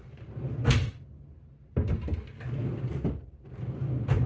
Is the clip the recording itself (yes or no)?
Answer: yes